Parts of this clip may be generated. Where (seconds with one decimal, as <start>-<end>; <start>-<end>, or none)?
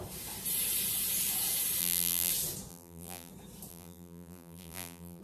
1.8-2.3; 2.7-3.3; 3.7-5.2